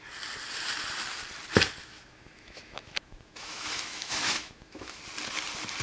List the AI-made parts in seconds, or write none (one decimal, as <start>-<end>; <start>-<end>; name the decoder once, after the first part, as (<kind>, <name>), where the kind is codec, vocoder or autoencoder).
1.8-5.0 (autoencoder, DAC-VAE)